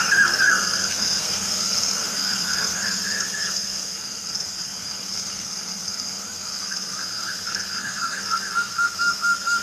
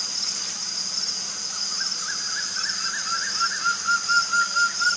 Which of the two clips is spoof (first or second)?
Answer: first